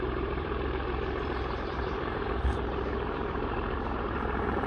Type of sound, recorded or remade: remade